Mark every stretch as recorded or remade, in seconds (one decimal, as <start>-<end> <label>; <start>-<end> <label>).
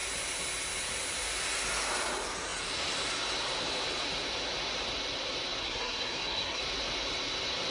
0.0-5.6 recorded; 5.6-6.6 remade; 6.6-7.7 recorded